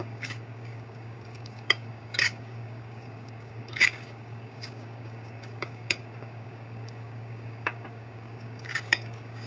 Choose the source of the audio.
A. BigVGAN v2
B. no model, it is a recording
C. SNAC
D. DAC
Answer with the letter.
D